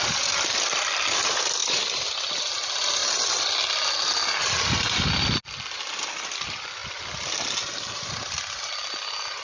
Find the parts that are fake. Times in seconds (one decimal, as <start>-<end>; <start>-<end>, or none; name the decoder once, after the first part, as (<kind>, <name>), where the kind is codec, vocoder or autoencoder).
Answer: none